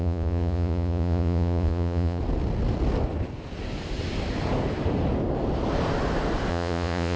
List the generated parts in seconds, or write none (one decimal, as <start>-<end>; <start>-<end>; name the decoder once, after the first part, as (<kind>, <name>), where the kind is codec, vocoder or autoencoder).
0.0-2.2 (vocoder, Vocos); 6.5-7.2